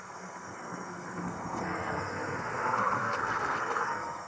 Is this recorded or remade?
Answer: remade